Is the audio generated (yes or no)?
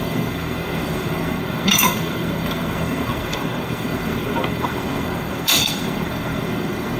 yes